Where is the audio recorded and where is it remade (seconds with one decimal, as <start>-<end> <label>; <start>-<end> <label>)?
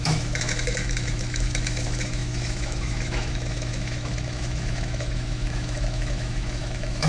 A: 0.0-7.1 remade